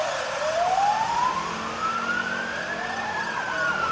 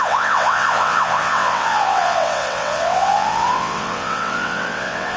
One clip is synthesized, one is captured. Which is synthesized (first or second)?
second